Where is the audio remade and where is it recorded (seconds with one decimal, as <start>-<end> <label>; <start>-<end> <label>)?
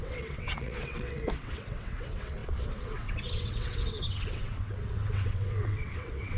0.0-6.4 remade